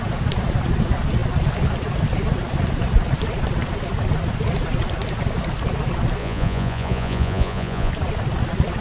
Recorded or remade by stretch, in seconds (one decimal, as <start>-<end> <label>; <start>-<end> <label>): 0.0-6.2 recorded; 6.2-7.9 remade; 7.9-8.8 recorded